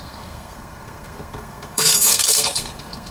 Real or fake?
fake